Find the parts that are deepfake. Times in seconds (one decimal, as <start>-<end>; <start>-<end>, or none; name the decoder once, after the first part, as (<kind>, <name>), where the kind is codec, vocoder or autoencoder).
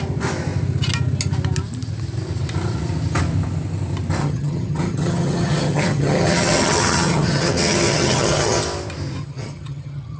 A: 4.2-8.6 (vocoder, HiFi-GAN); 9.2-10.2